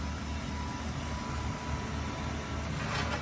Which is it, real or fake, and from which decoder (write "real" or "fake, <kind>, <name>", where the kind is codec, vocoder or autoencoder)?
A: real